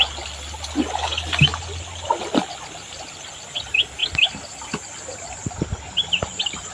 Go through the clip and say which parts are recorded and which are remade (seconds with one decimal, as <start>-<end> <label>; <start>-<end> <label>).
0.0-4.0 recorded; 4.0-6.3 remade; 6.3-6.7 recorded